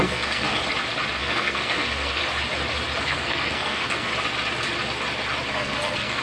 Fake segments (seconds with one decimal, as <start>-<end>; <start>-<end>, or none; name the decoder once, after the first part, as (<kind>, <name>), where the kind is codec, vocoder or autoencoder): 0.0-0.6 (codec, SNAC); 1.2-2.2; 3.0-4.1; 5.5-6.2